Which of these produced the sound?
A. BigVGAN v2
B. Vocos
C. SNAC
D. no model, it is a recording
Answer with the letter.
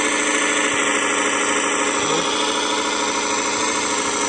D